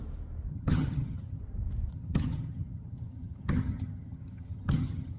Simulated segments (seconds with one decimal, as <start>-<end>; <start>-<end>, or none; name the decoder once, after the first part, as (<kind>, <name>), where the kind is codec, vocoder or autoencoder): 0.5-1.4 (vocoder, HiFi-GAN); 1.9-5.2